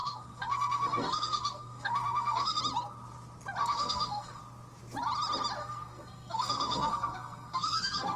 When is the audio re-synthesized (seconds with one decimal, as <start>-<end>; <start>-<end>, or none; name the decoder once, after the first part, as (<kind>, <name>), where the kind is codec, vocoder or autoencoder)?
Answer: 0.0-2.6 (codec, SNAC); 3.6-4.4; 5.6-8.2